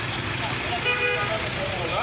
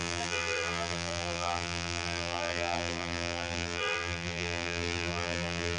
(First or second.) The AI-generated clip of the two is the second